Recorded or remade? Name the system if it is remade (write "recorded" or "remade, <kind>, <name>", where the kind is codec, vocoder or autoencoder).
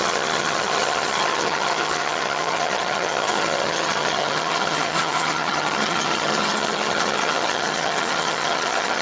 remade, vocoder, HiFi-GAN